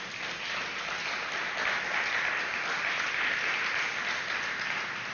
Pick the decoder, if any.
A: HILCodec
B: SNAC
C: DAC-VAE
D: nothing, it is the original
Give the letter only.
D